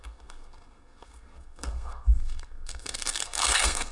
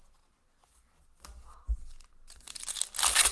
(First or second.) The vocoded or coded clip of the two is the first